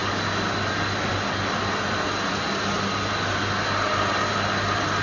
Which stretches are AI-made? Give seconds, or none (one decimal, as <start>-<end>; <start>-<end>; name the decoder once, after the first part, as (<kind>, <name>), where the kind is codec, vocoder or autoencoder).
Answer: none